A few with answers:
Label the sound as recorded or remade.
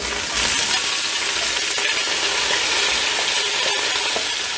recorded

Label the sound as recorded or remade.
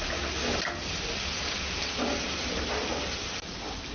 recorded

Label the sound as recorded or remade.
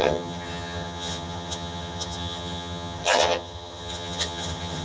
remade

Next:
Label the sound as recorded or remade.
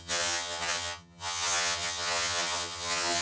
remade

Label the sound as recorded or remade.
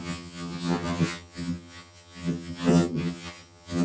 remade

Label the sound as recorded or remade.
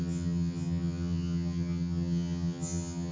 remade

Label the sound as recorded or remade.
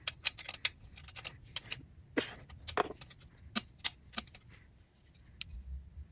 recorded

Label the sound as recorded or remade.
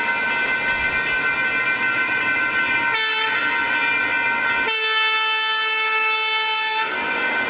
recorded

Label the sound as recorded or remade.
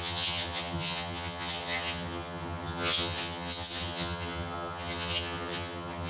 remade